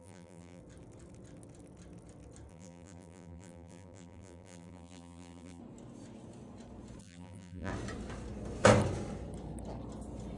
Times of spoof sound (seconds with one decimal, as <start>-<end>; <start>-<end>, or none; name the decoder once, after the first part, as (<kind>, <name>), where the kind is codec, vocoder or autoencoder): 0.0-0.6 (vocoder, BigVGAN v2); 2.5-5.6; 7.0-7.7